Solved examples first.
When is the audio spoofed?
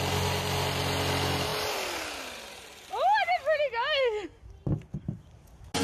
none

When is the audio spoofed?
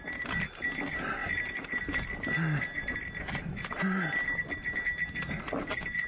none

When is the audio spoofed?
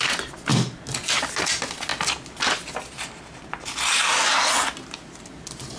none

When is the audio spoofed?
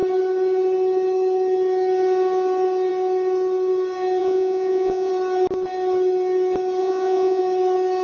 4.2-5.1 (vocoder, Vocos); 6.8-7.4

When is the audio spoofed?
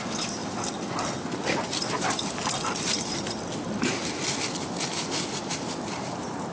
none